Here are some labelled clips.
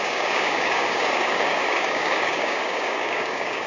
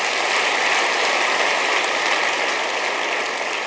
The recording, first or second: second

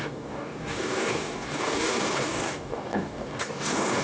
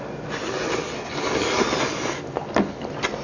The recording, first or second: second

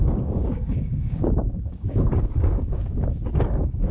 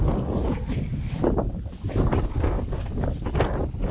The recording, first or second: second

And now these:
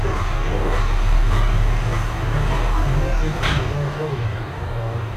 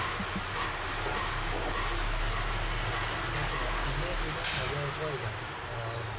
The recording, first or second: second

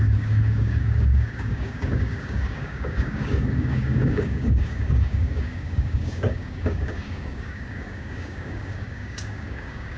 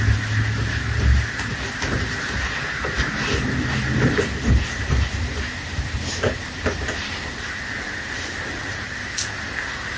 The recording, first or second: second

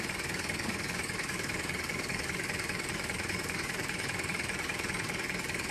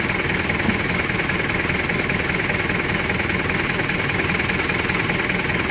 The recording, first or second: second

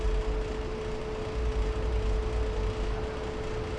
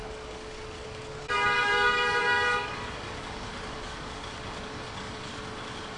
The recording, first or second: first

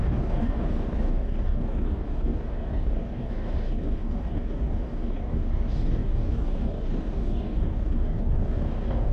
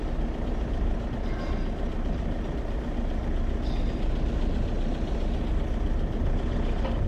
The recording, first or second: second